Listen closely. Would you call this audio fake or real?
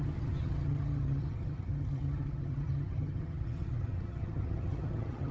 fake